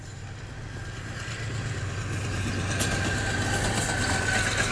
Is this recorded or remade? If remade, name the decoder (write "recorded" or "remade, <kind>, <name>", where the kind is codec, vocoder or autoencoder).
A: recorded